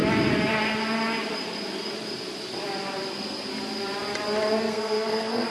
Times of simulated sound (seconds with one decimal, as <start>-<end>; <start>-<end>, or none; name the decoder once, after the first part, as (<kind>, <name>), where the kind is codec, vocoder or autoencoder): 3.1-3.5 (codec, SNAC); 4.6-5.5